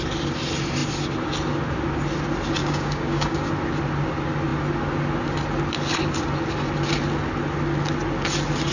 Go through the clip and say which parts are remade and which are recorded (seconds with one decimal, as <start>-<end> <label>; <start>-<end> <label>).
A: 0.0-2.6 recorded; 2.6-3.5 remade; 3.5-8.7 recorded